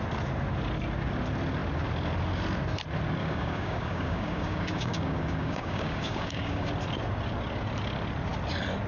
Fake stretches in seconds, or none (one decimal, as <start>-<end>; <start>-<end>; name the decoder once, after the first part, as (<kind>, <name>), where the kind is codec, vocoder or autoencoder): 3.2-6.7 (codec, DAC)